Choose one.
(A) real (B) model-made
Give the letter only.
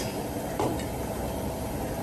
B